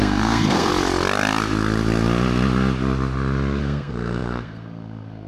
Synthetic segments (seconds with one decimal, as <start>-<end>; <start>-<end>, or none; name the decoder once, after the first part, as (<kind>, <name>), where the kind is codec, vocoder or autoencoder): 0.0-0.7 (codec, SNAC); 3.6-5.3